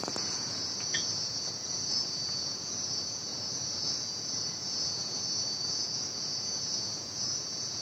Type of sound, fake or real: fake